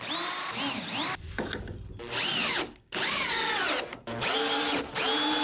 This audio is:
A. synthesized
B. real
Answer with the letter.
B